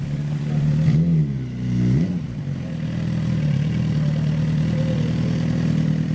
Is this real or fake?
real